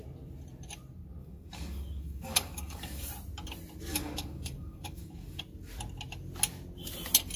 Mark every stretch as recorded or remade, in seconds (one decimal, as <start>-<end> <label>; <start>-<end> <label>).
0.0-1.2 recorded; 1.2-3.1 remade; 3.1-3.9 recorded; 3.9-5.4 remade; 5.4-7.4 recorded